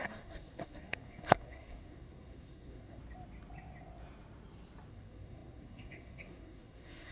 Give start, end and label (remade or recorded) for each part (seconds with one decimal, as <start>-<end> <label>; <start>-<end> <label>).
0.0-3.0 remade; 3.0-4.9 recorded; 4.9-7.1 remade